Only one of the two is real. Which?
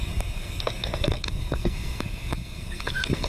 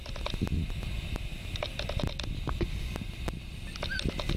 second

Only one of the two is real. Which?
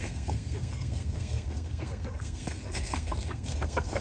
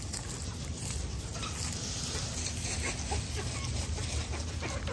second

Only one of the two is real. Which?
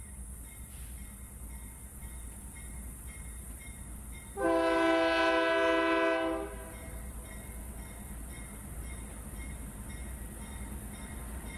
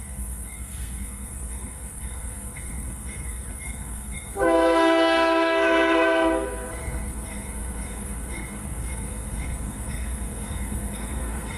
first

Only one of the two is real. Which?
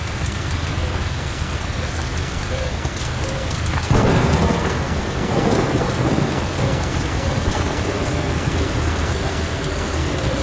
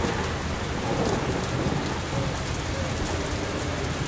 second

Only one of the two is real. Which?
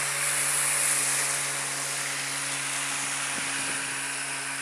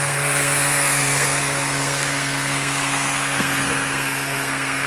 first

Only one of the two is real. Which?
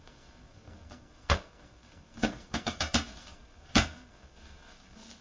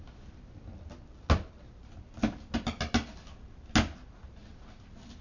second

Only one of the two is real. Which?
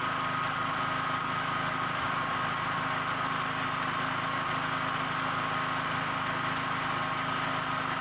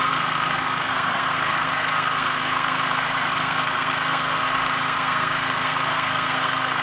first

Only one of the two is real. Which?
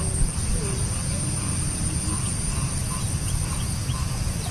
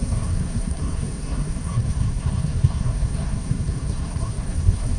first